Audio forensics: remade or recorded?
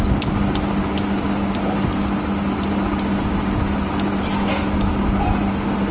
recorded